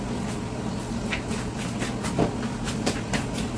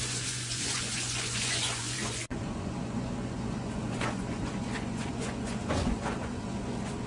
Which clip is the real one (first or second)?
first